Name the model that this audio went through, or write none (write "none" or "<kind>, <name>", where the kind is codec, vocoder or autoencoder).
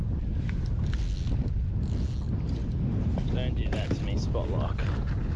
none